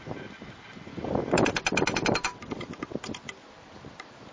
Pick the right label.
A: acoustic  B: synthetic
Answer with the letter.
A